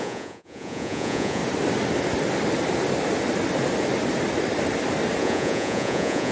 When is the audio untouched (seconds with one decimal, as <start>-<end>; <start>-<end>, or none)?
1.4-5.2